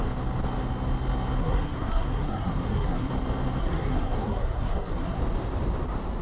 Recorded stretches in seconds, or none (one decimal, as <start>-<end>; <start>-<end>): 0.0-1.4; 3.1-3.6; 5.2-6.2